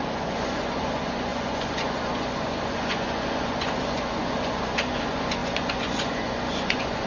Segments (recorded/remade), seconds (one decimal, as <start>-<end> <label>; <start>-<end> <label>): 0.0-7.1 remade

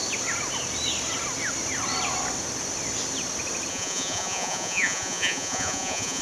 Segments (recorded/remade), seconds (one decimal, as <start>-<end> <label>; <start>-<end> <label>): 0.0-3.7 recorded; 3.7-6.2 remade

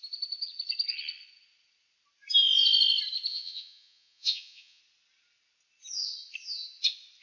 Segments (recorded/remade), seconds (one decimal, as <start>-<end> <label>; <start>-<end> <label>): 0.0-3.3 recorded; 3.3-4.8 remade; 4.8-7.2 recorded

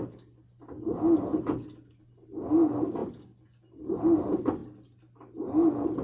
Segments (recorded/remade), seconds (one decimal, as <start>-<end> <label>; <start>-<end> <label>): 0.0-6.0 recorded

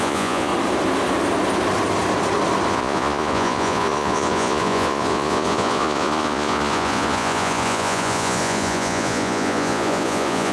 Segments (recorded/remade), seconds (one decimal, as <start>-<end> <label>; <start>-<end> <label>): 0.0-0.5 remade; 0.5-2.7 recorded; 2.7-10.5 remade

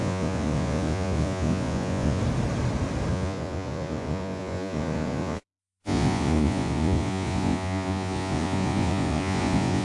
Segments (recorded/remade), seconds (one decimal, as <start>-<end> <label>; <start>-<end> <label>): 0.0-2.2 remade; 2.2-3.1 recorded; 3.1-9.8 remade

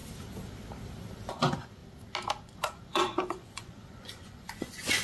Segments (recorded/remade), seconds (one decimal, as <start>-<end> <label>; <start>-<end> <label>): 0.0-1.3 recorded; 1.3-1.8 remade; 1.8-2.4 recorded; 2.4-5.0 remade

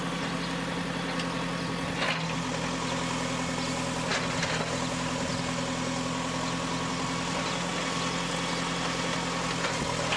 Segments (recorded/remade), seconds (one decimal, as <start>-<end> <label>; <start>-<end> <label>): 0.0-10.2 recorded